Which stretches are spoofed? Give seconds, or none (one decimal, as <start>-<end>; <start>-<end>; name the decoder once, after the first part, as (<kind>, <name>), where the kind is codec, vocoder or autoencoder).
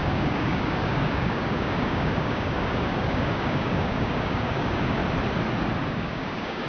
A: 0.0-5.0 (codec, DAC); 5.9-6.7